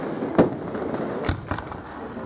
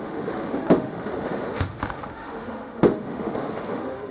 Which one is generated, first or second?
second